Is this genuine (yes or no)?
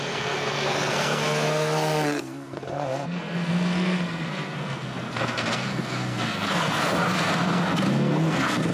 no